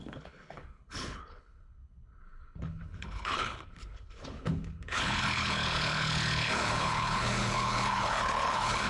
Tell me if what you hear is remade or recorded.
remade